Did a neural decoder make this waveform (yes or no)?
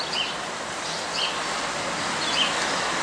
no